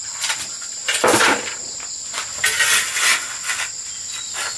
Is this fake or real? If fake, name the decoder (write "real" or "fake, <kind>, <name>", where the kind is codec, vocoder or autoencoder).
real